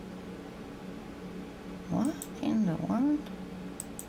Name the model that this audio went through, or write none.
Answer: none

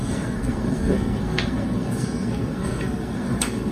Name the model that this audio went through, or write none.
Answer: codec, SNAC